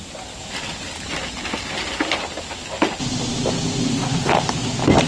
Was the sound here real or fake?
real